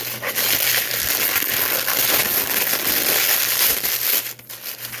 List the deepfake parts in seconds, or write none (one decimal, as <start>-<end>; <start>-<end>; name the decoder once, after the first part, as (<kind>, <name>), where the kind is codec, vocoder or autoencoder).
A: none